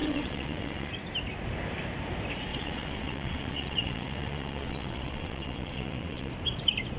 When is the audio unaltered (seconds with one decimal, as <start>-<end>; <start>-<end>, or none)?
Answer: 0.9-2.5; 6.3-7.0